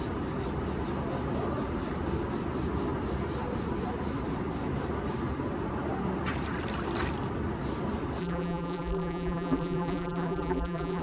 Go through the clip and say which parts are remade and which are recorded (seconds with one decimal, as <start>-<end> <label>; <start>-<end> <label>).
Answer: 0.0-8.2 recorded; 8.2-11.0 remade